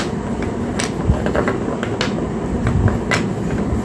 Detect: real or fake real